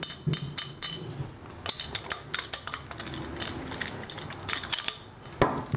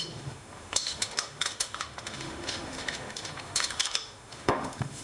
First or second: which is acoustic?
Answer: first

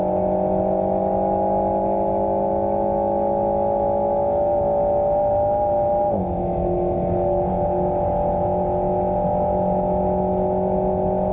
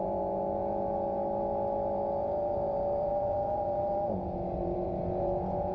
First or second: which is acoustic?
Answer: first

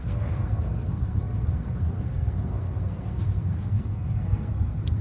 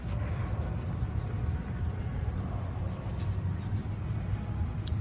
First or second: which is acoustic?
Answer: second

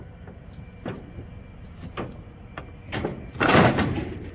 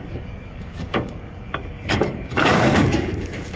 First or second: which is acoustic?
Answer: first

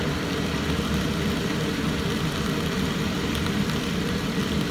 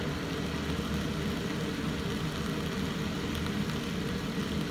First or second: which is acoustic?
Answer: second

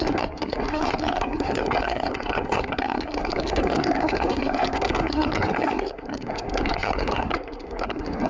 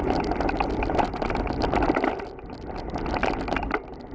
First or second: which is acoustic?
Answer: second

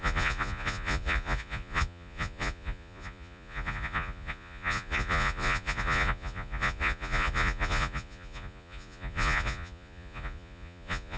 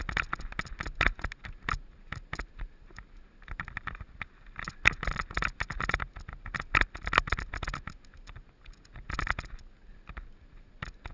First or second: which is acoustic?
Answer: second